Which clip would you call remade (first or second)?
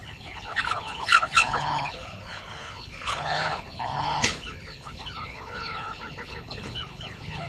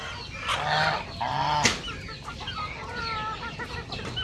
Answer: first